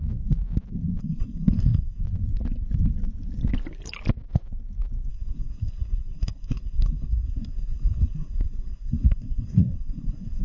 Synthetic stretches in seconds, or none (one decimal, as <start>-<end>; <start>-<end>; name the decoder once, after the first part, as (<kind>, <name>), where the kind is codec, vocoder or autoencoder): 1.0-2.0 (codec, SNAC); 5.1-10.4